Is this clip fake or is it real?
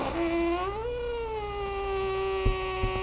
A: real